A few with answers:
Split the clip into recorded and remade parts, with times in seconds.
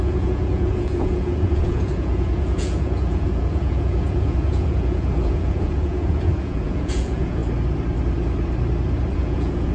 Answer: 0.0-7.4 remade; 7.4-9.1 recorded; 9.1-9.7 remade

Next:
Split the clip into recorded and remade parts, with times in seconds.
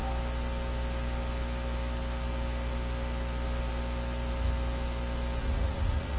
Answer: 0.0-5.4 recorded; 5.4-6.2 remade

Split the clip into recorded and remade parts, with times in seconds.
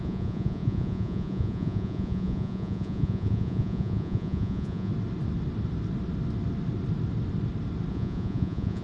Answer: 0.0-4.9 remade; 4.9-7.9 recorded; 7.9-8.8 remade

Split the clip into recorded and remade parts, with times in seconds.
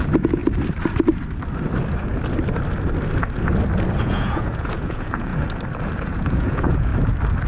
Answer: 0.0-0.4 remade; 0.4-4.0 recorded; 4.0-5.3 remade; 5.3-6.1 recorded; 6.1-6.9 remade; 6.9-7.5 recorded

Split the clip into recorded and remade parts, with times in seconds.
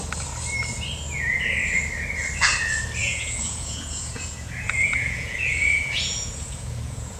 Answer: 0.0-3.0 recorded; 3.0-7.2 remade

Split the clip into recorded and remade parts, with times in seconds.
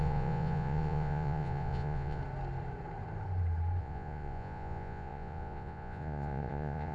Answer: 0.0-2.2 remade; 2.2-3.8 recorded; 3.8-6.9 remade